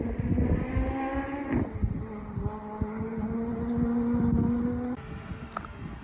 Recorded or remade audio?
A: recorded